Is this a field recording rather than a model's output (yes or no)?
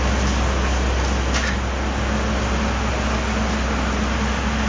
yes